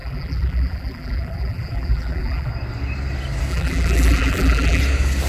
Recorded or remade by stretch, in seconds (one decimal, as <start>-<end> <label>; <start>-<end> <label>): 0.0-2.5 remade; 2.5-3.5 recorded; 3.5-4.8 remade; 4.8-5.3 recorded